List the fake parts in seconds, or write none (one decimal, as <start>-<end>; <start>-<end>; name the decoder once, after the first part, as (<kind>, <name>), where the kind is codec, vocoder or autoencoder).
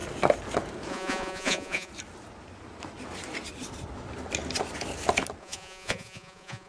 0.9-1.9 (vocoder, Vocos); 5.4-6.7